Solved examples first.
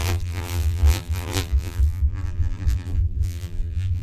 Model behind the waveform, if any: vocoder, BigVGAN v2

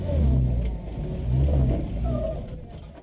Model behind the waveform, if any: none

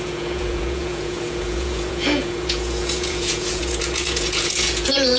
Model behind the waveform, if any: vocoder, Vocos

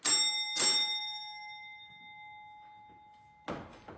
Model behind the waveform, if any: none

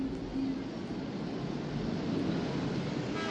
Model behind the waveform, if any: none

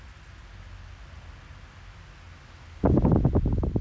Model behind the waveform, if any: none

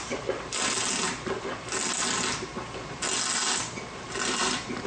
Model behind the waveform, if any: none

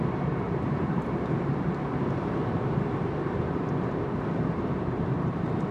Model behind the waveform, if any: vocoder, BigVGAN v2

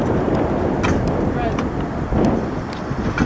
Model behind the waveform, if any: none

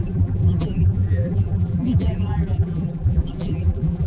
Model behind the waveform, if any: vocoder, BigVGAN v2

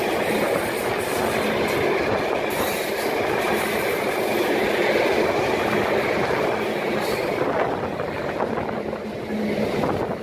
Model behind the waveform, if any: none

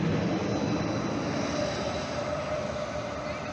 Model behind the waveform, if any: none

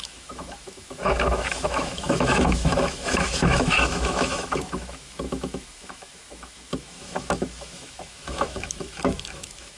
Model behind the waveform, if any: autoencoder, DAC-VAE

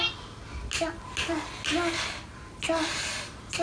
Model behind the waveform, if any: none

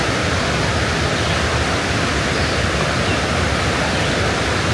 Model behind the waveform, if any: none